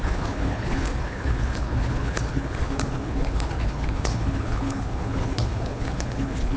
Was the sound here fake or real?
fake